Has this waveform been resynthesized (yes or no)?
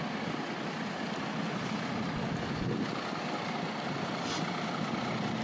no